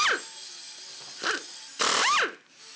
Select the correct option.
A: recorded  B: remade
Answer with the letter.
A